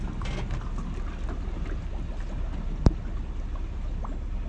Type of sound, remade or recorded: recorded